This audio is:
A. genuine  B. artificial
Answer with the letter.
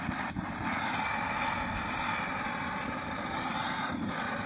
A